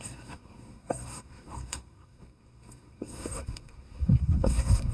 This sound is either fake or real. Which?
fake